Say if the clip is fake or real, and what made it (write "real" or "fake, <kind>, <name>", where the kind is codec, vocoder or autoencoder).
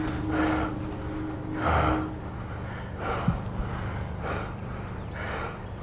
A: real